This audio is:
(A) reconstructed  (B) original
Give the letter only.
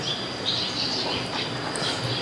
B